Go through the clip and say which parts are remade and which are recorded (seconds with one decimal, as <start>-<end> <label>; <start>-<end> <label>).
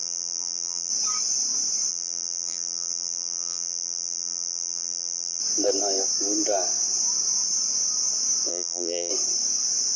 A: 0.0-0.9 remade; 0.9-1.9 recorded; 1.9-5.4 remade; 5.4-8.5 recorded; 8.5-9.1 remade; 9.1-10.0 recorded